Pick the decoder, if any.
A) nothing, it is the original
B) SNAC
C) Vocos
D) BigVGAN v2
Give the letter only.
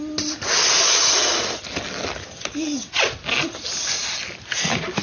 A